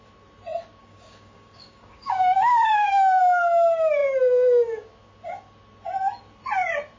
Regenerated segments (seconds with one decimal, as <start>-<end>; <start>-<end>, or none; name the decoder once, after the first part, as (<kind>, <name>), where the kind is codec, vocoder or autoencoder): 0.8-3.2 (codec, DAC)